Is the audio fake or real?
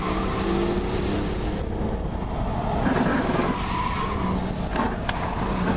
real